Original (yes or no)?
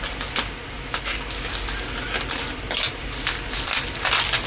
yes